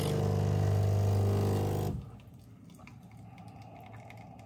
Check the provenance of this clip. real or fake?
real